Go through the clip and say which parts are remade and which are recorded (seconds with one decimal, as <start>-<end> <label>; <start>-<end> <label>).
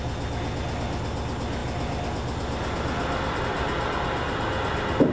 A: 0.0-5.1 recorded